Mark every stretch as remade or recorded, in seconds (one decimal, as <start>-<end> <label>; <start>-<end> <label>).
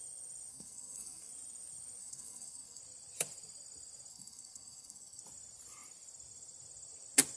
0.0-0.5 recorded; 0.5-1.3 remade; 1.3-2.0 recorded; 2.0-2.8 remade; 2.8-4.1 recorded; 4.1-5.2 remade; 5.2-7.4 recorded